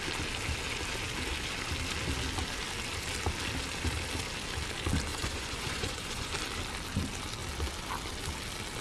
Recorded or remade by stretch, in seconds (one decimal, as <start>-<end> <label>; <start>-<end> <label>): 0.0-5.1 recorded; 5.1-6.3 remade; 6.3-8.8 recorded